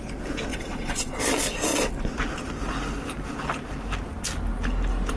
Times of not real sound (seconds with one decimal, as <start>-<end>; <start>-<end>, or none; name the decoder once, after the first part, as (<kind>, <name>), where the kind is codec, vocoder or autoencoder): 0.5-1.2 (vocoder, WaveNeXt)